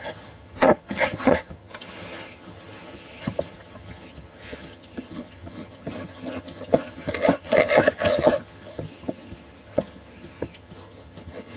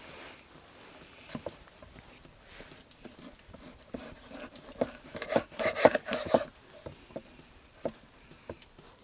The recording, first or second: second